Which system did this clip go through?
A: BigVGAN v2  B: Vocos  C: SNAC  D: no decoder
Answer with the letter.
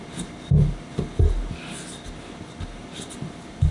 D